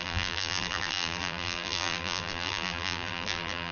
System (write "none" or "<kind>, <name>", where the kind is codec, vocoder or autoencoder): vocoder, BigVGAN v2